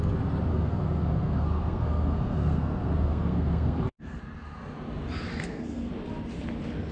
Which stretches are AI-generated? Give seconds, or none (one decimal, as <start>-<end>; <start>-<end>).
0.5-4.2; 5.3-5.9